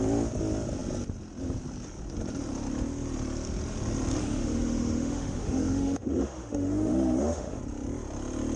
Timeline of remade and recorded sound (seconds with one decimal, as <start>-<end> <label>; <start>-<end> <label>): 0.0-4.2 recorded; 4.2-7.6 remade; 7.6-8.6 recorded